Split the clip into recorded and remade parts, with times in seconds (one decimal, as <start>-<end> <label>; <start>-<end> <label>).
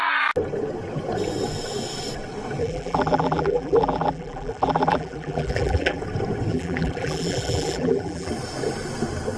0.0-2.6 recorded; 2.6-6.0 remade; 6.0-6.5 recorded; 6.5-8.3 remade; 8.3-9.4 recorded